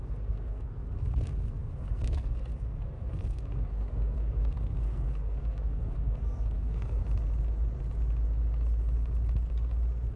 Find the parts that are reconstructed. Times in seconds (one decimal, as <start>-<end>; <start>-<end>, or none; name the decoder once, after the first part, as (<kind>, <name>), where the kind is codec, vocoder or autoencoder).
0.0-7.0 (codec, SNAC)